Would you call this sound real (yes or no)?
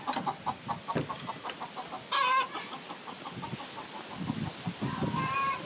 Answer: yes